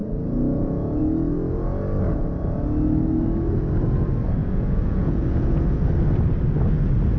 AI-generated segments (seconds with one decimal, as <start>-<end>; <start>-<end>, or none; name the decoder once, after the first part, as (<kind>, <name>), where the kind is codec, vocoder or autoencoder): 0.0-1.0 (vocoder, Vocos); 4.4-5.8

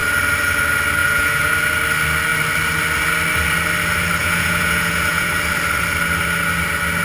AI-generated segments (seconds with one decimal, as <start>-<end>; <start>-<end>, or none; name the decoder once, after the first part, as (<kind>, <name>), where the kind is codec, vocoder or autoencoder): 1.0-1.5 (vocoder, Vocos); 4.2-5.3

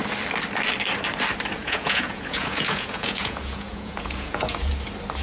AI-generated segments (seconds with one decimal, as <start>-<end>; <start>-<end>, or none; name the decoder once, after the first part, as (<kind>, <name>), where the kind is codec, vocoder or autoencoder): 1.6-4.7 (vocoder, Vocos)